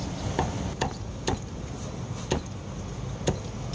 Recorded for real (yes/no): yes